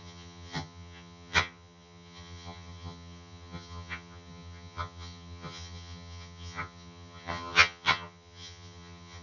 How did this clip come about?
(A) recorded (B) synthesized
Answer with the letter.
B